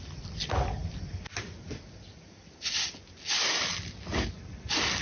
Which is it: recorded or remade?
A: recorded